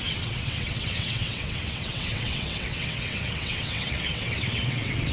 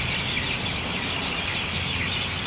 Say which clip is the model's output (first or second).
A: first